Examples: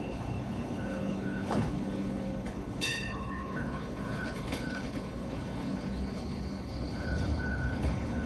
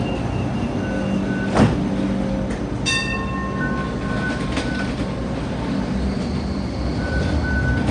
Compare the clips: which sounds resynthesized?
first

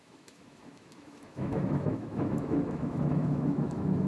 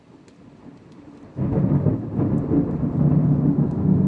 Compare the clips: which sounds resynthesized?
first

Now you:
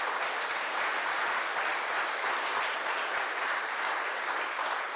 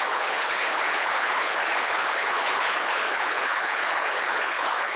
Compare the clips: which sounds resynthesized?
second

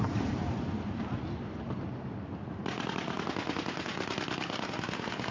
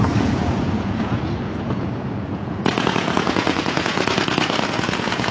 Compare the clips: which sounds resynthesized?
second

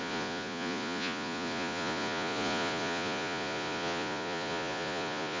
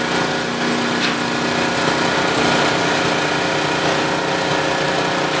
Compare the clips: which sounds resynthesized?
first